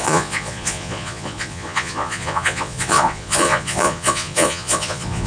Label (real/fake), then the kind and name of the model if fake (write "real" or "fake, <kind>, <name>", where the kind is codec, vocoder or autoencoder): fake, vocoder, Vocos